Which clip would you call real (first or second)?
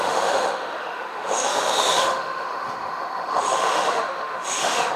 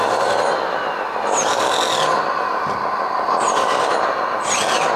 second